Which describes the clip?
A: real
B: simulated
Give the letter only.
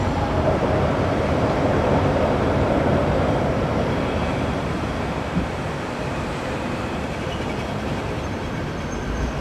B